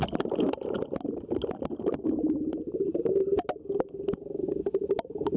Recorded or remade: recorded